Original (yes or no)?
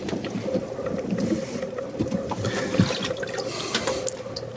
yes